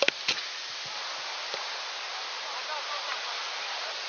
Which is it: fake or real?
real